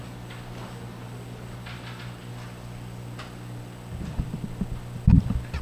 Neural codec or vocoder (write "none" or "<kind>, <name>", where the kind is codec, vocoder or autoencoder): none